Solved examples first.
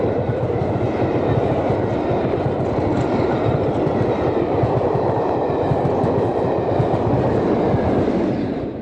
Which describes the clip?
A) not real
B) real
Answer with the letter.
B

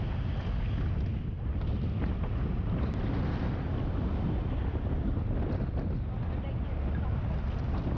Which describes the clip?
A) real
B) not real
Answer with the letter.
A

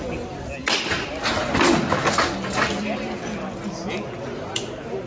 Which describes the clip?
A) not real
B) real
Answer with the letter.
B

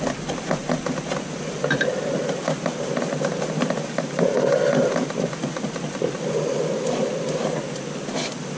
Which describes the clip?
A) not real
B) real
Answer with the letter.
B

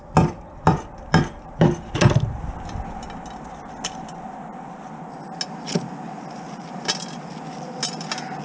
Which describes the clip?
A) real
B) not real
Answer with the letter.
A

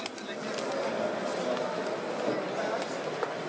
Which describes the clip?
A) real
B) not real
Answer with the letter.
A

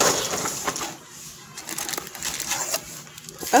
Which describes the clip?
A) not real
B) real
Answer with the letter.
B